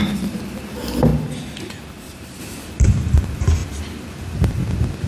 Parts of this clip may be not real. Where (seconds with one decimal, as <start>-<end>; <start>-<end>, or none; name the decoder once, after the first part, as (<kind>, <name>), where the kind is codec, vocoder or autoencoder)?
none